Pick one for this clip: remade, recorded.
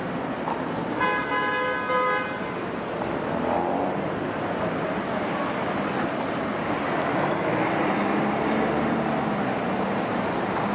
recorded